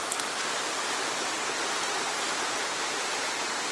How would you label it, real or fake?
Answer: real